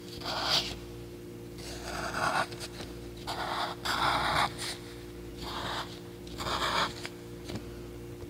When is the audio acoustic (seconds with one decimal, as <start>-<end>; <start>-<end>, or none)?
0.0-2.3; 4.3-5.3; 6.2-8.3